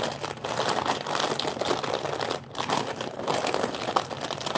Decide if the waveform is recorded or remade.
recorded